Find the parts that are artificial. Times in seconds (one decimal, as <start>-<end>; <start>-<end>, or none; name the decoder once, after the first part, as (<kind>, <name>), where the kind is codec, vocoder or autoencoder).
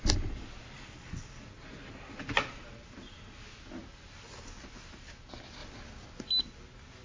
none